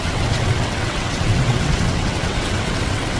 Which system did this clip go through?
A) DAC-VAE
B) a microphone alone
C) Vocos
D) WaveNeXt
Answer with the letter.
D